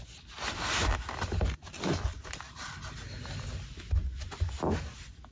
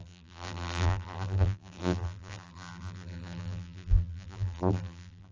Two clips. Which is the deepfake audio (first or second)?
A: second